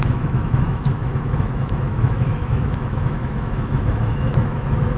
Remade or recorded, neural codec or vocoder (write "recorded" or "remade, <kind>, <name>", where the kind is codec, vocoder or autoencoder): remade, autoencoder, DAC-VAE